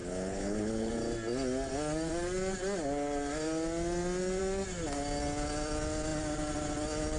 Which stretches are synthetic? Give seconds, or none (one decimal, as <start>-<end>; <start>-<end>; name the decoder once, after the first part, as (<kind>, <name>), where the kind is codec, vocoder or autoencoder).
0.0-0.9 (codec, HILCodec)